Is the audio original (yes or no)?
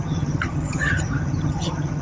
no